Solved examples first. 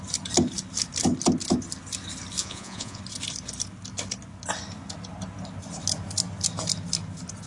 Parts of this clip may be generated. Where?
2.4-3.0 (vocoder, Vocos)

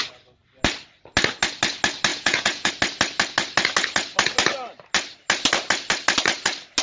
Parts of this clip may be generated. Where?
2.1-2.7 (vocoder, Vocos)